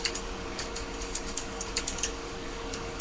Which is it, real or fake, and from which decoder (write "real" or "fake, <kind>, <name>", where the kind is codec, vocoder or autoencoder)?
fake, codec, DAC